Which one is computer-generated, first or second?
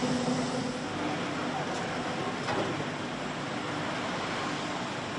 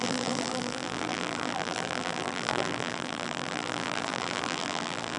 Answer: second